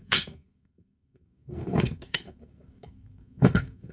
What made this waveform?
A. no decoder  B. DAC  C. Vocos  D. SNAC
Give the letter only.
D